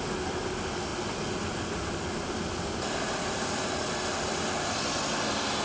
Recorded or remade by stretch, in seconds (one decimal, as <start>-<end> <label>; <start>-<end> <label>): 0.0-5.6 recorded